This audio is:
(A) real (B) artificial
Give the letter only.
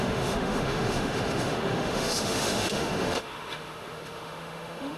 B